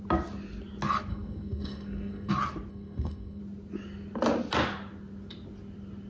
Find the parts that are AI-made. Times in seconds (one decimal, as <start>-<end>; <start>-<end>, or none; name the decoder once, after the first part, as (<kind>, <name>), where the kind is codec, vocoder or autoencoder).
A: 1.1-2.3 (codec, SNAC); 2.7-3.4